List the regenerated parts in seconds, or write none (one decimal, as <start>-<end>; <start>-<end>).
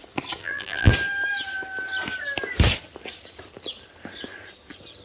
0.4-0.9